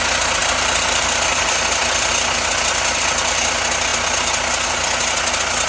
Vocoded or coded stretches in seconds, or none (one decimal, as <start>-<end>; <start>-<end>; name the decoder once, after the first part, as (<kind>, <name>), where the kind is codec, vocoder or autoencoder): 0.4-2.1 (vocoder, BigVGAN v2)